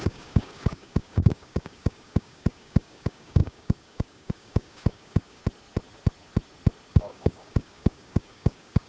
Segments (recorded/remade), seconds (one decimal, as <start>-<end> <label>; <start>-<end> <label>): 0.0-5.4 remade; 5.4-6.9 recorded; 6.9-8.9 remade